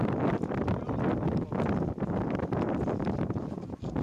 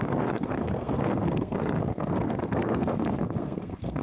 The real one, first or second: first